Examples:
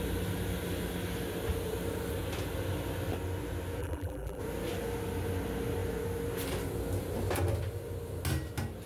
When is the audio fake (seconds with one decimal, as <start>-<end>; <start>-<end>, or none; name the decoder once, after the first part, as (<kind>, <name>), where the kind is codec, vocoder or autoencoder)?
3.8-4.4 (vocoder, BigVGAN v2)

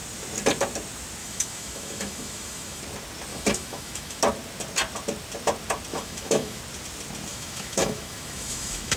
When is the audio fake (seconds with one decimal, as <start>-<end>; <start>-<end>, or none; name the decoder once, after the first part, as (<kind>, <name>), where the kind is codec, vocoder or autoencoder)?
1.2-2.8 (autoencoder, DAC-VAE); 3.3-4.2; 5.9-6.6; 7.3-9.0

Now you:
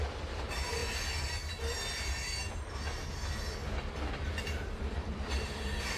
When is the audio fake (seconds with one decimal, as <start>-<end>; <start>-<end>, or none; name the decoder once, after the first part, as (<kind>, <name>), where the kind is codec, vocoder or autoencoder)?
0.0-0.8 (vocoder, BigVGAN v2); 4.4-6.0